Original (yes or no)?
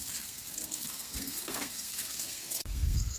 no